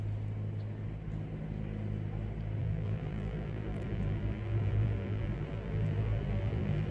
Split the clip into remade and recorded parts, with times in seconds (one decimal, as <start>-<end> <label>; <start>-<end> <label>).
0.0-2.6 recorded; 2.6-6.9 remade